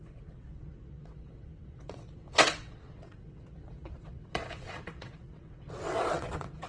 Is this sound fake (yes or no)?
yes